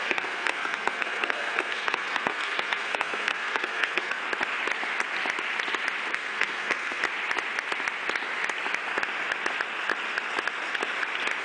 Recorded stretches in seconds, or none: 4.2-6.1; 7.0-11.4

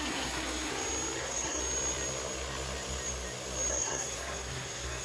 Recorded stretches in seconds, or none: 0.7-1.2; 1.6-3.7

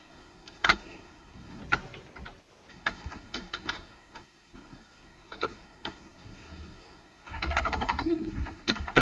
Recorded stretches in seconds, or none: 1.6-2.7